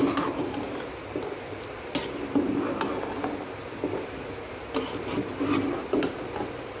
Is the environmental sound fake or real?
real